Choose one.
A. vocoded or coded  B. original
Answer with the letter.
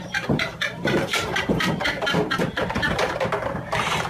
A